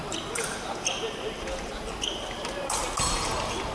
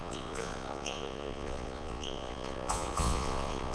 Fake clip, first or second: second